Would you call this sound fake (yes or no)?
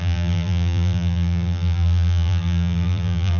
yes